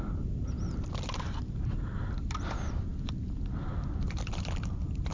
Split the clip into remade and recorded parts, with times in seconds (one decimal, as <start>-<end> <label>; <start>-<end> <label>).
0.0-5.1 remade